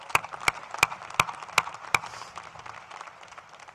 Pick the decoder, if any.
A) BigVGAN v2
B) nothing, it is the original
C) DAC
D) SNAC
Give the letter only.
B